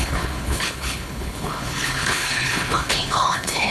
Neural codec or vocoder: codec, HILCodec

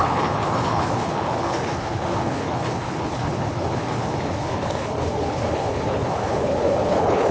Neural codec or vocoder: codec, HILCodec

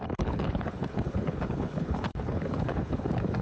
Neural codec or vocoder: codec, HILCodec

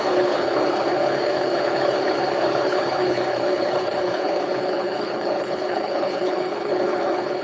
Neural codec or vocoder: codec, HILCodec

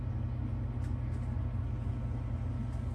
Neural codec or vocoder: none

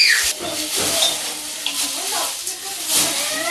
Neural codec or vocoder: none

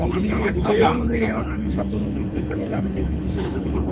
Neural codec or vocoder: codec, HILCodec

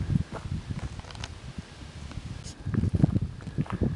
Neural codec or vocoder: none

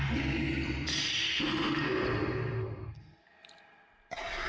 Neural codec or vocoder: none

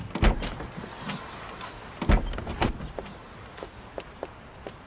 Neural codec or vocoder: none